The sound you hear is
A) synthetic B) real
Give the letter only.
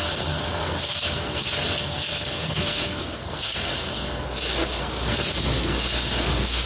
A